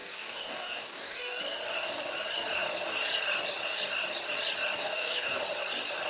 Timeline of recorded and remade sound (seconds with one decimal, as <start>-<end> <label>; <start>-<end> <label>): 0.0-1.4 remade; 1.4-4.8 recorded; 4.8-5.4 remade; 5.4-6.1 recorded